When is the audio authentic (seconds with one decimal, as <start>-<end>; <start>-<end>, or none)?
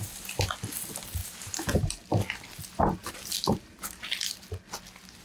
0.0-1.2; 1.9-3.0; 4.1-5.2